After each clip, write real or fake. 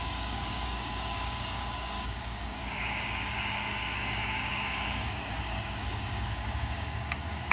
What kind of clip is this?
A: fake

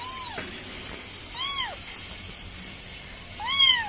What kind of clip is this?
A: real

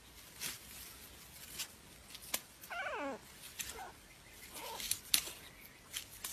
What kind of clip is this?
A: real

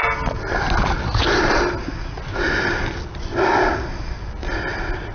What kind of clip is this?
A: real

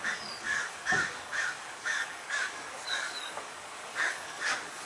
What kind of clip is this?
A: fake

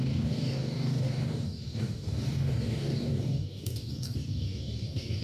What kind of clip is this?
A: fake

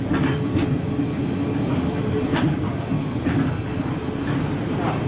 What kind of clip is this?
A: real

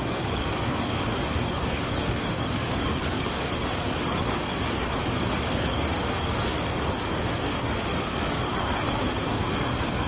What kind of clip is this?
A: fake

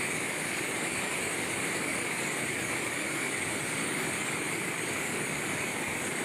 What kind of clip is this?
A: fake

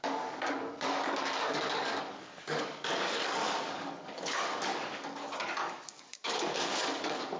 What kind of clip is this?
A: fake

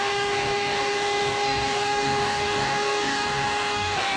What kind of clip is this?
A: fake